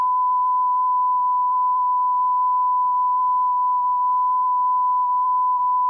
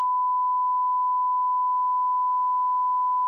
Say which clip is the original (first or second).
second